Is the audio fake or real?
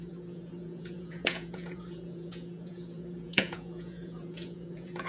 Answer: fake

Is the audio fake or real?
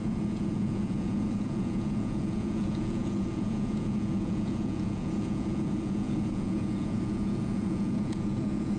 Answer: fake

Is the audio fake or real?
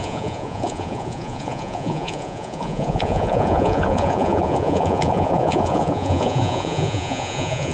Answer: fake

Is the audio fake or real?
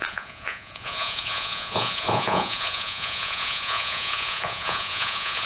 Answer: fake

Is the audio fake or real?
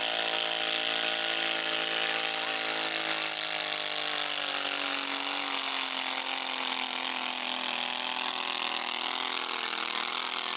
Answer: real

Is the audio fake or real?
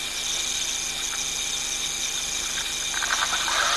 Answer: real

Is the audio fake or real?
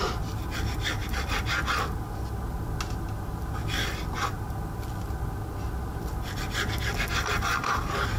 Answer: real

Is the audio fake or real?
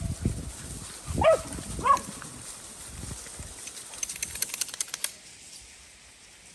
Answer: real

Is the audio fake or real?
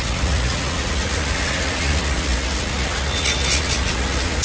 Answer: fake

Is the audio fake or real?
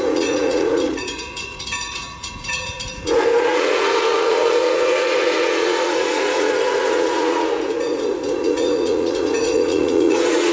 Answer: fake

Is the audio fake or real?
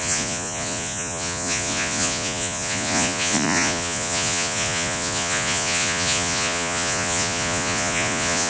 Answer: fake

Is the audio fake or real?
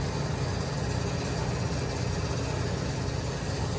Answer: real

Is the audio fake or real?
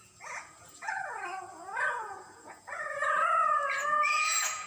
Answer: fake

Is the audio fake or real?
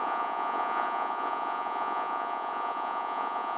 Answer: fake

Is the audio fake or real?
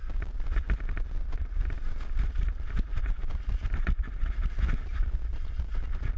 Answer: real